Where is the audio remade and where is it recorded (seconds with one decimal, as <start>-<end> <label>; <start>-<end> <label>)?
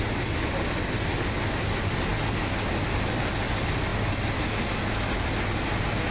0.0-6.1 recorded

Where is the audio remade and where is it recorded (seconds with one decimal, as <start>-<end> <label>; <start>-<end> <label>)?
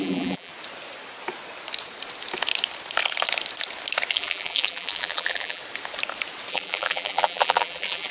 0.0-0.5 remade; 0.5-4.1 recorded; 4.1-5.6 remade; 5.6-6.5 recorded; 6.5-8.1 remade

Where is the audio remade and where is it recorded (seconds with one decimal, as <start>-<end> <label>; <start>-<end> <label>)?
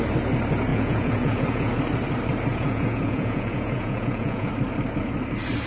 0.0-0.7 recorded; 0.7-1.8 remade; 1.8-2.5 recorded; 2.5-4.5 remade; 4.5-5.7 recorded